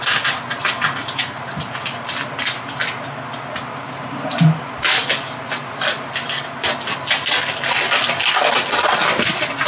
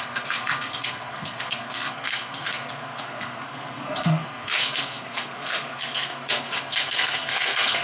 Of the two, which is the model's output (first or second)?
second